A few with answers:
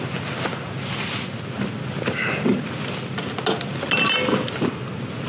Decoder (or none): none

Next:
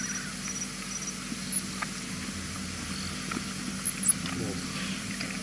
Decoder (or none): none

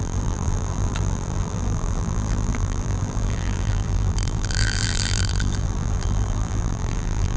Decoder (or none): vocoder, BigVGAN v2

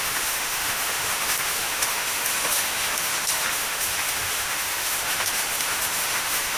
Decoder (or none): autoencoder, DAC-VAE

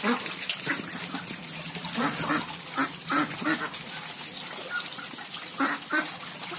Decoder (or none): none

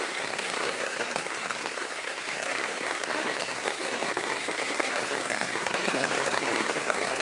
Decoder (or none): codec, SNAC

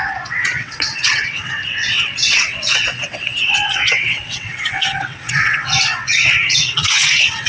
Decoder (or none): vocoder, WaveNeXt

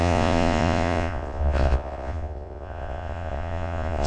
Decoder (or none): vocoder, Vocos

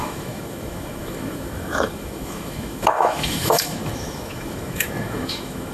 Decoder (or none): autoencoder, DAC-VAE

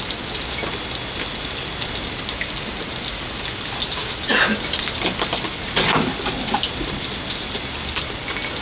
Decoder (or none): none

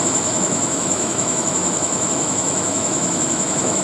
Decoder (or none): autoencoder, DAC-VAE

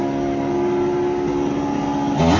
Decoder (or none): none